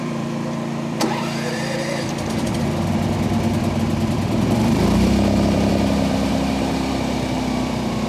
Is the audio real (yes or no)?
no